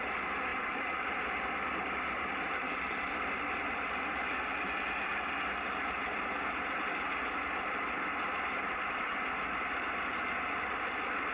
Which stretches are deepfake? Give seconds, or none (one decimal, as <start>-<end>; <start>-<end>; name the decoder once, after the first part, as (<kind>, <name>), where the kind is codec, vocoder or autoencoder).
0.5-3.9 (vocoder, BigVGAN v2)